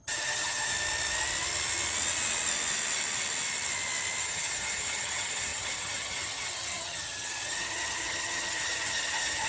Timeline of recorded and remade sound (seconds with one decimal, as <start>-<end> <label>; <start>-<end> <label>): 0.0-0.7 remade; 0.7-4.2 recorded; 4.2-9.5 remade